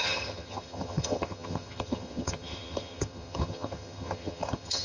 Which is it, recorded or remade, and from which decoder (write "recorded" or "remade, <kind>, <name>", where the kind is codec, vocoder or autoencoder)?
remade, vocoder, HiFi-GAN